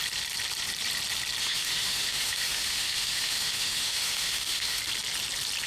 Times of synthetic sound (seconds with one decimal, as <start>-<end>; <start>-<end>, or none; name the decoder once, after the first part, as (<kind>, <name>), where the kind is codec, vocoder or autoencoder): 1.4-4.8 (autoencoder, DAC-VAE)